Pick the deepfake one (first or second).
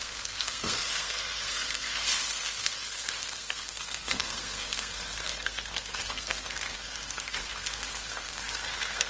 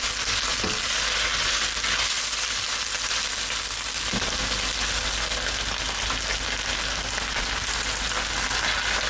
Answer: first